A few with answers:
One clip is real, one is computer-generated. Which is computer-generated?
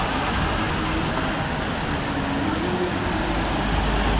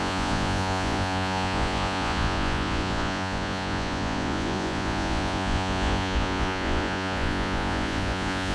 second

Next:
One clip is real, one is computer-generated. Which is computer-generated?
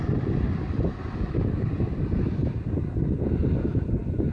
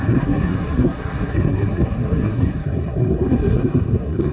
second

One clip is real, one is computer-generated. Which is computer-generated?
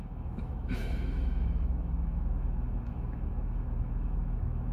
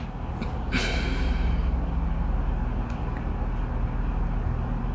first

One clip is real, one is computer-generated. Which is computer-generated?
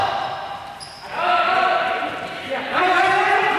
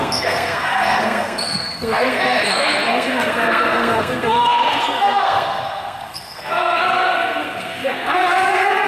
second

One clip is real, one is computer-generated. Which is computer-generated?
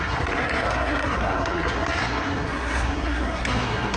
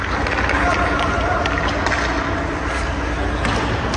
first